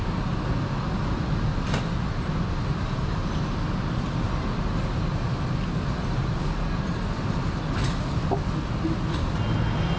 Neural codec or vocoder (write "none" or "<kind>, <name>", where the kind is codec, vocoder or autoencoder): none